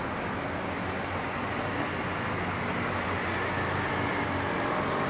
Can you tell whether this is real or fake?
real